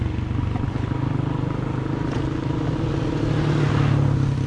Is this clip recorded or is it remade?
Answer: recorded